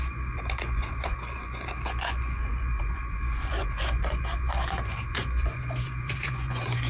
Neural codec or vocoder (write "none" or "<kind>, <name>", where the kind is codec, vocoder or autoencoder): vocoder, Vocos